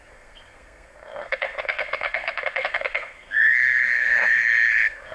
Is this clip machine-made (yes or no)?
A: yes